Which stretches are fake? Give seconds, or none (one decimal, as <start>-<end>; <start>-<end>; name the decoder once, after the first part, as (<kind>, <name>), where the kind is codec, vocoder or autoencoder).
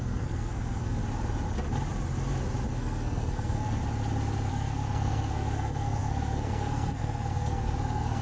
0.0-1.0 (codec, SNAC); 2.7-3.8; 4.5-8.2